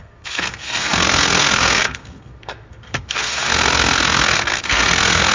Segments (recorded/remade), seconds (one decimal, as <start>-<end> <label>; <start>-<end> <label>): 0.0-5.3 remade